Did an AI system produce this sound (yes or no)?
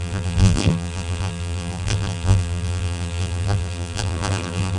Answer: yes